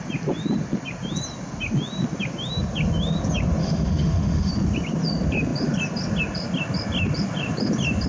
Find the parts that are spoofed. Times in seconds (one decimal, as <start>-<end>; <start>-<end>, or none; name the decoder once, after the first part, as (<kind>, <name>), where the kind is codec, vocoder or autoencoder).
3.6-4.5 (autoencoder, DAC-VAE)